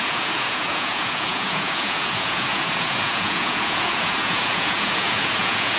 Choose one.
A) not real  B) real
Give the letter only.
A